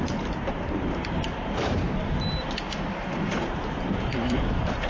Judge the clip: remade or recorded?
remade